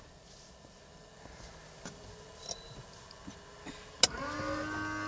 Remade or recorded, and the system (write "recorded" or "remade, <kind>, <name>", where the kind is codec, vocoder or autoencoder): recorded